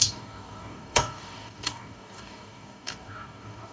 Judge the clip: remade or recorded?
remade